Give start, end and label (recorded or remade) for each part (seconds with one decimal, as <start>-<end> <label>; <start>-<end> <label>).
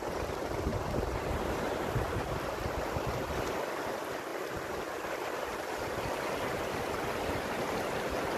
0.0-8.4 recorded